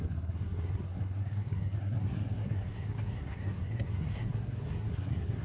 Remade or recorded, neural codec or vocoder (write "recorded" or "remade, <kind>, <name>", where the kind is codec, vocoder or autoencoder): remade, codec, SNAC